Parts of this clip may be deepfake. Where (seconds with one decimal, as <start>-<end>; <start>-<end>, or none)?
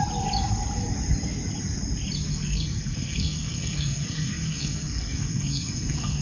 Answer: 2.3-6.2